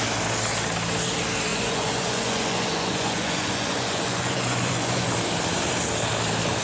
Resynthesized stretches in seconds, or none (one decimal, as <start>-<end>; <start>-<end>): 1.5-5.1

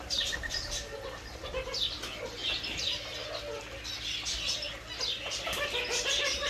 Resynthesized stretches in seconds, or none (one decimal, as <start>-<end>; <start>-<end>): 2.4-3.8